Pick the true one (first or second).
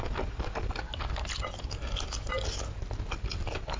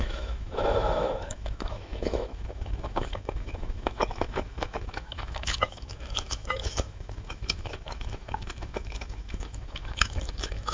first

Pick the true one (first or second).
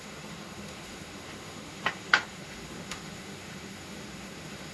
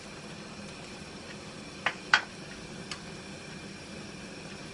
second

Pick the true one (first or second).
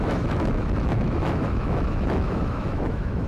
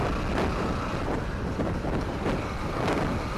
second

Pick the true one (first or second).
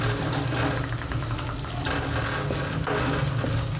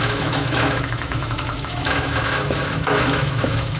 first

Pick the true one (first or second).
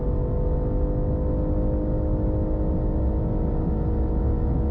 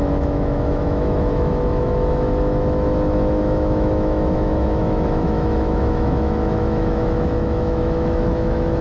first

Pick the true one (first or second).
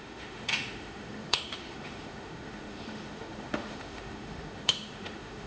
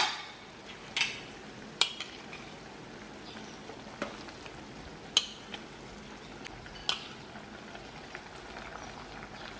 second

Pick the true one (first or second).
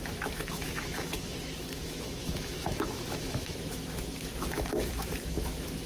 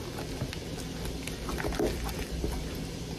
second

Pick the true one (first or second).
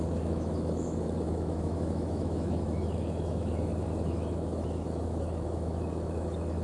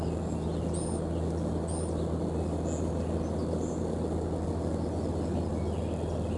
second